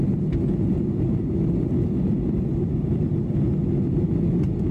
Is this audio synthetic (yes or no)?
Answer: no